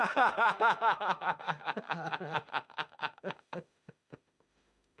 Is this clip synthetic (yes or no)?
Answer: yes